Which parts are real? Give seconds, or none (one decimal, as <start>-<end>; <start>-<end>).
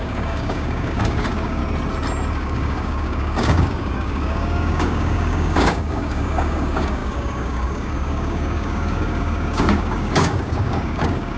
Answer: 1.6-2.3